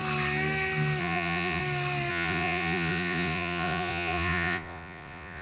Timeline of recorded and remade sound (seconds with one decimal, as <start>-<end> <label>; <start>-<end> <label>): 0.0-1.0 recorded; 1.0-1.6 remade; 1.6-2.1 recorded; 2.1-5.4 remade